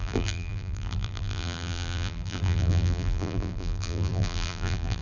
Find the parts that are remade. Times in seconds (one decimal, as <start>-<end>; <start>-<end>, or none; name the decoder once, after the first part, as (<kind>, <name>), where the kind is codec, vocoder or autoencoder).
0.0-5.0 (vocoder, BigVGAN v2)